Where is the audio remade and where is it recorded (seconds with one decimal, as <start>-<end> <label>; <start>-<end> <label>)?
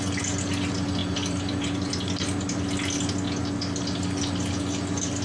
0.0-5.2 recorded